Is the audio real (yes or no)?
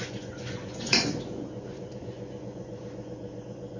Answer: no